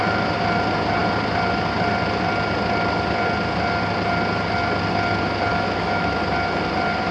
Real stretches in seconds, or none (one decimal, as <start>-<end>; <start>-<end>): 0.0-5.5; 6.2-7.1